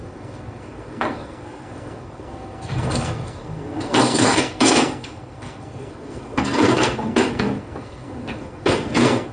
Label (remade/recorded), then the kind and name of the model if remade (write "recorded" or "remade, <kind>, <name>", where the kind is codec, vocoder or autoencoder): remade, codec, SNAC